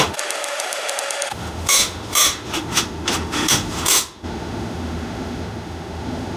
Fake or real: fake